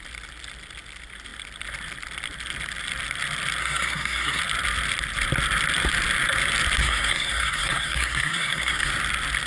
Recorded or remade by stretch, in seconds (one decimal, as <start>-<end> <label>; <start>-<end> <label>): 0.0-3.6 recorded; 3.6-4.4 remade; 4.4-6.8 recorded; 6.8-8.9 remade; 8.9-9.5 recorded